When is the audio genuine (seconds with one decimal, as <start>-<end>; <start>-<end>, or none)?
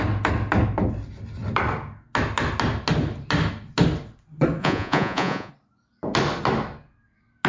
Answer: 0.0-4.6; 5.5-7.5